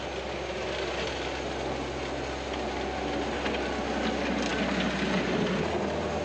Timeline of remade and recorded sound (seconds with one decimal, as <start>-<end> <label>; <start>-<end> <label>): 0.0-6.2 recorded